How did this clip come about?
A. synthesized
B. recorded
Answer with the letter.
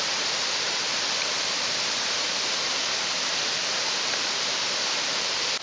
A